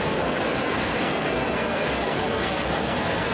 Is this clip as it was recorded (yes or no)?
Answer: no